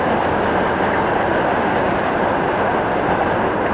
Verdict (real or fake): real